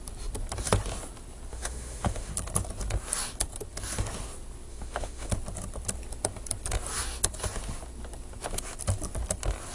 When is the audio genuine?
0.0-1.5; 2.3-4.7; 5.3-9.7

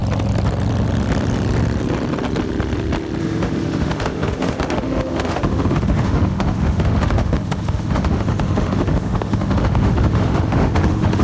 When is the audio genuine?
0.0-3.2

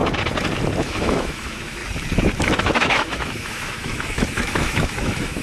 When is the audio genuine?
0.0-0.8; 1.8-2.4

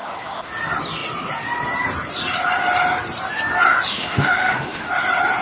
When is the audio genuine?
0.5-3.9; 4.9-5.4

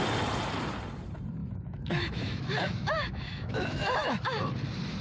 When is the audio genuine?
0.0-1.4; 4.4-5.0